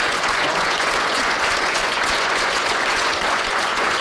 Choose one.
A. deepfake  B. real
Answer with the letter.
A